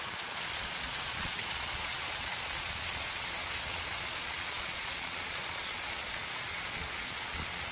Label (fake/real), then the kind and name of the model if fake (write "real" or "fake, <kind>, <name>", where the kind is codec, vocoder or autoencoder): fake, vocoder, Vocos